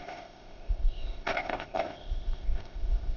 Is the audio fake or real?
fake